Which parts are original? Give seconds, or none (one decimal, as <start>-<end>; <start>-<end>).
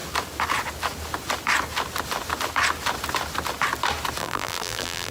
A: 0.0-4.2